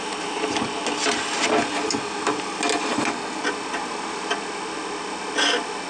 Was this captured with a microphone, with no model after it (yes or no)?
yes